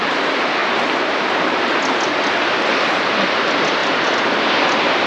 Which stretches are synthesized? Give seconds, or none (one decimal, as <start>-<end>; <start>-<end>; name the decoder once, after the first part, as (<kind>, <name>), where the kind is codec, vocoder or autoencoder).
none